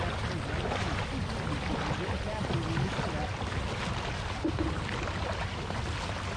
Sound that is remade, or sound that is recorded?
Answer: recorded